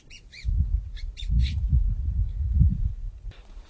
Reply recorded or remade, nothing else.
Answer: remade